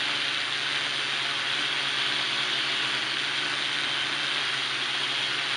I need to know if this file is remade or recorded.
recorded